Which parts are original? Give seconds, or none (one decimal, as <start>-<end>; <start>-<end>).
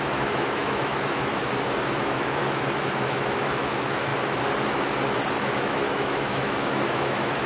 1.4-2.0; 4.1-5.4